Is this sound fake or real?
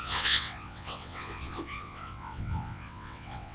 fake